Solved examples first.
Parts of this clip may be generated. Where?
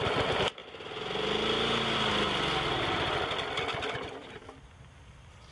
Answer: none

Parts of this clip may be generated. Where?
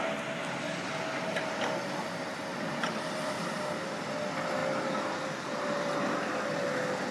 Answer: 2.5-3.7; 4.6-6.5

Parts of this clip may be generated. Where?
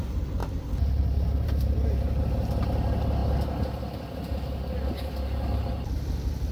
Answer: 0.4-2.2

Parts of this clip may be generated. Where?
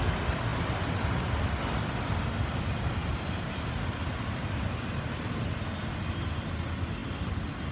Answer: 3.1-5.6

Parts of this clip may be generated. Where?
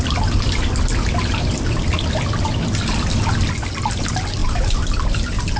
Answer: 4.4-5.6